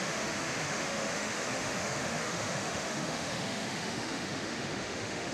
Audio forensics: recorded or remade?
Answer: remade